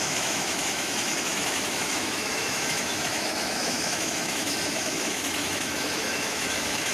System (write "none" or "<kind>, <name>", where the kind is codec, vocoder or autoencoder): autoencoder, DAC-VAE